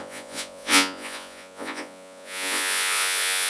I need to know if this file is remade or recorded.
remade